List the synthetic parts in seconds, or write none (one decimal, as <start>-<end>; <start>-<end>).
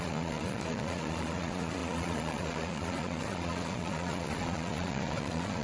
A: 0.0-5.6